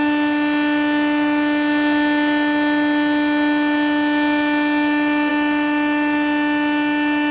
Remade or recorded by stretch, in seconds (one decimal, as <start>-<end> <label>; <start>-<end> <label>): 0.0-7.3 recorded